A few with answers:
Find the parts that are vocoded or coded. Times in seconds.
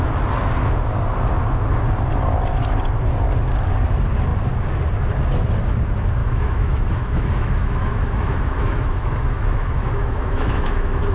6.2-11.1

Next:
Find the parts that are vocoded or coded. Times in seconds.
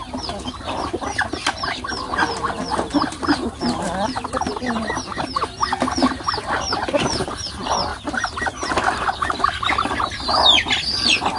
none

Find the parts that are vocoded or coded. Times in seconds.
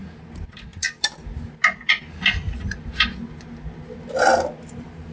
none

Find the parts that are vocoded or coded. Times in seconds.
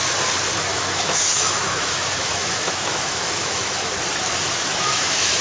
0.7-3.9; 4.7-5.4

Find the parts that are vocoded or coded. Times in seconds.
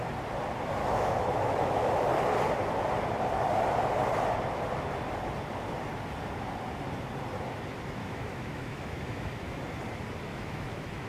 0.8-1.9; 8.0-9.6; 10.3-11.1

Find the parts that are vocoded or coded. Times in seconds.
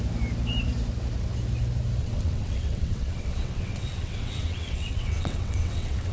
2.0-6.1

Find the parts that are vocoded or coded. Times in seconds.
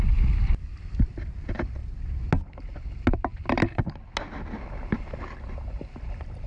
none